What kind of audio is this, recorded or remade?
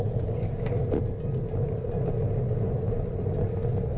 recorded